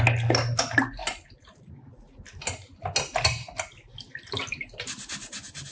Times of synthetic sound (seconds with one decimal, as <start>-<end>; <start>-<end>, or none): none

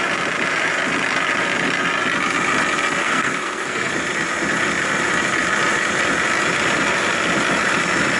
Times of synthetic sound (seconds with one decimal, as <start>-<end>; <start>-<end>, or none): 3.0-3.9

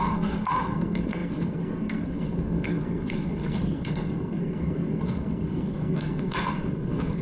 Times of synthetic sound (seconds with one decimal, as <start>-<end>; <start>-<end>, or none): 0.0-7.2

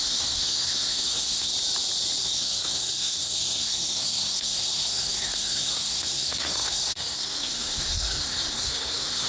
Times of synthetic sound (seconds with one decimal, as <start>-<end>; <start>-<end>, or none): 0.0-1.5; 2.2-9.3